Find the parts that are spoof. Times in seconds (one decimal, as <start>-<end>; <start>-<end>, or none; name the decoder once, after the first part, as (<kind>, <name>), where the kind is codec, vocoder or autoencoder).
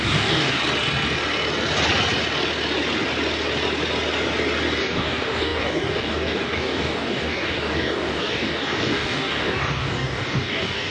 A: 0.0-0.6 (codec, DAC); 4.8-10.9